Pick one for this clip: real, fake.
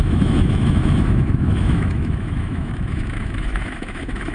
fake